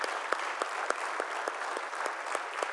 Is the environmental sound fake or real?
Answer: real